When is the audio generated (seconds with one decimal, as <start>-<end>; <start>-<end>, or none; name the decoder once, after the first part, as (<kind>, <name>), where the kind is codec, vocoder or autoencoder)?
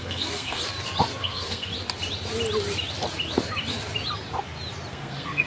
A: 0.0-0.6 (codec, SNAC); 1.2-1.7; 4.9-5.5